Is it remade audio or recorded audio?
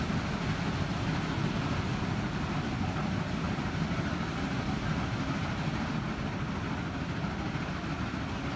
recorded